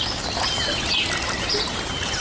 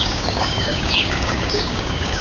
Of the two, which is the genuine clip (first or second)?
first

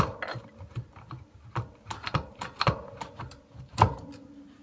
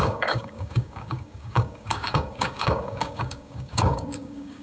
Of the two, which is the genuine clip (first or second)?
first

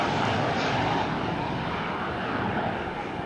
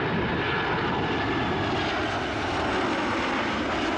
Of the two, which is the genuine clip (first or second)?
second